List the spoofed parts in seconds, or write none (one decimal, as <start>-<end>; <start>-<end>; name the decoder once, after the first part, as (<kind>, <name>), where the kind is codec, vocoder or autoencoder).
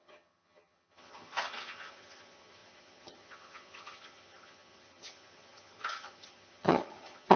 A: 0.0-7.4 (vocoder, HiFi-GAN)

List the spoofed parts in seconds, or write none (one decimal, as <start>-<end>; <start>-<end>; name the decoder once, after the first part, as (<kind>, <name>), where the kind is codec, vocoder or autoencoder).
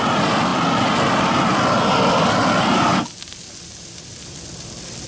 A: none